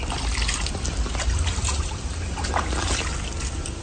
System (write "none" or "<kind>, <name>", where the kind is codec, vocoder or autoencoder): none